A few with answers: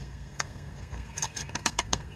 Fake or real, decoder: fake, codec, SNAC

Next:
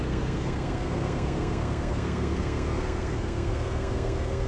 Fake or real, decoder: fake, codec, SNAC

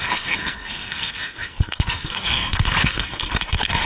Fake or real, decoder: fake, codec, SNAC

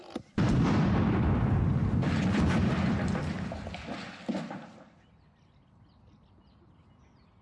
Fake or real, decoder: real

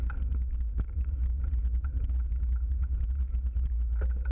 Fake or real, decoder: real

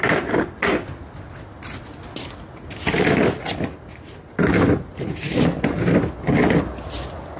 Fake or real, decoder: real